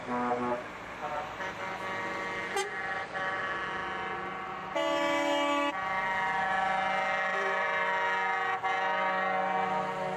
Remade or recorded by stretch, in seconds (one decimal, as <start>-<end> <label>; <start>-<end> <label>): 0.0-1.0 recorded; 1.0-1.6 remade; 1.6-2.6 recorded; 2.6-3.4 remade; 3.4-7.3 recorded; 7.3-7.9 remade; 7.9-10.2 recorded